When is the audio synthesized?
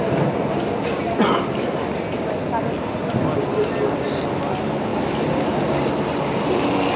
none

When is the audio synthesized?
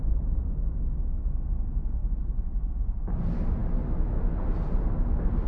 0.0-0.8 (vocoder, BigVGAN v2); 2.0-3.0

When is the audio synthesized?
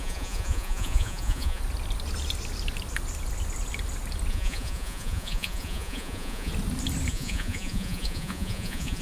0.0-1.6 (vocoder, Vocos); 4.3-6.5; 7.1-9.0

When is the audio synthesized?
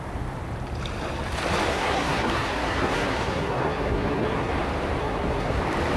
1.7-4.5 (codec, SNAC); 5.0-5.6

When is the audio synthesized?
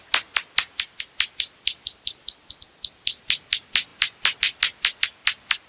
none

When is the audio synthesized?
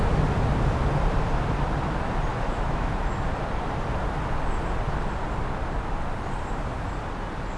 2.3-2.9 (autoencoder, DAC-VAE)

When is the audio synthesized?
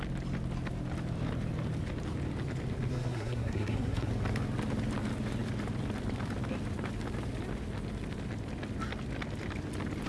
2.9-4.1 (codec, SNAC)